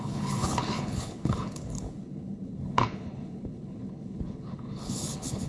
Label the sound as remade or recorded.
remade